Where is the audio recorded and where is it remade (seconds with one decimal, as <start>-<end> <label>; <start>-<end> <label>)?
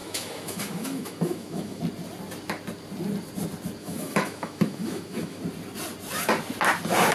0.0-1.8 remade; 1.8-3.8 recorded; 3.8-5.4 remade; 5.4-7.1 recorded